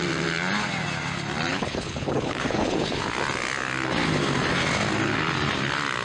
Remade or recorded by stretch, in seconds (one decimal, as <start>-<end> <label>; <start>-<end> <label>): 0.0-1.5 recorded; 1.5-3.0 remade; 3.0-6.0 recorded